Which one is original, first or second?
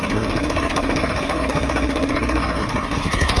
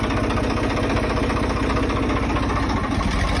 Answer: second